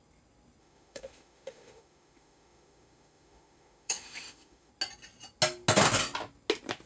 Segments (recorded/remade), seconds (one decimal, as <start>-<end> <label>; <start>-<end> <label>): 0.0-0.6 recorded; 0.6-4.7 remade; 4.7-6.9 recorded

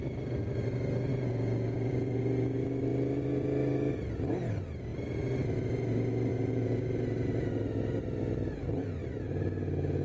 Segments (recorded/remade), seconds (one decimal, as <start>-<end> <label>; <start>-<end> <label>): 0.0-1.1 recorded; 1.1-2.2 remade; 2.2-6.3 recorded; 6.3-6.8 remade; 6.8-10.0 recorded

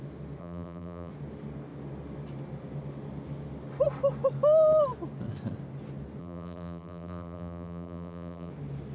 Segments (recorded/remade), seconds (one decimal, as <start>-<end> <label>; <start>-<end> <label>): 0.0-0.4 recorded; 0.4-1.1 remade; 1.1-6.2 recorded; 6.2-8.5 remade; 8.5-8.9 recorded

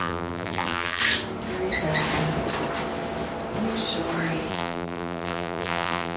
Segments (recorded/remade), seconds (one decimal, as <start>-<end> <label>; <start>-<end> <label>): 0.0-1.0 remade; 1.0-4.5 recorded; 4.5-6.2 remade